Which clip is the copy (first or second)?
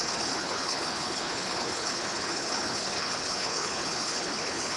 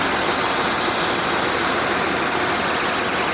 first